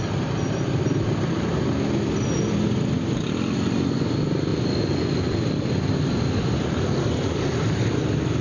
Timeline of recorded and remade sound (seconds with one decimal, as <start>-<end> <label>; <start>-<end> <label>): 0.0-8.4 recorded